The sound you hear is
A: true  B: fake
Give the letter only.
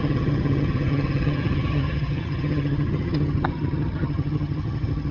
B